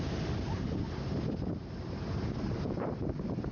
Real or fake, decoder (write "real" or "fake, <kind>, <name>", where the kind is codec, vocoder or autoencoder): fake, vocoder, BigVGAN v2